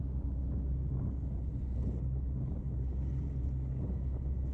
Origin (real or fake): real